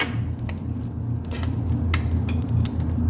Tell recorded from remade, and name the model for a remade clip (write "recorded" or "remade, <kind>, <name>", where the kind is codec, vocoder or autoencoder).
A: recorded